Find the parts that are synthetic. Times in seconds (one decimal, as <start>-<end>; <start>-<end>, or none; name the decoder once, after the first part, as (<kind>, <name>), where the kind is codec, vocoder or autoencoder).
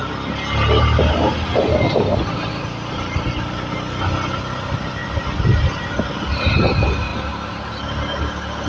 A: none